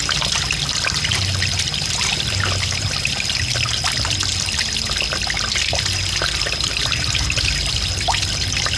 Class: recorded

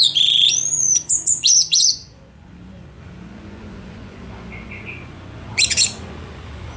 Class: remade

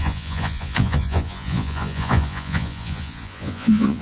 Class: remade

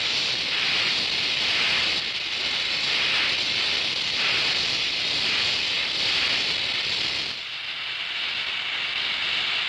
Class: recorded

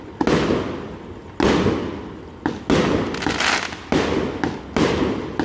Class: recorded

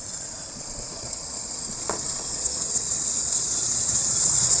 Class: remade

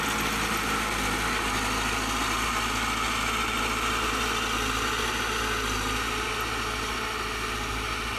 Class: recorded